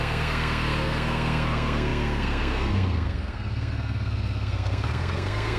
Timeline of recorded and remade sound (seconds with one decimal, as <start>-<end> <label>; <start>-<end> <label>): 0.0-5.6 remade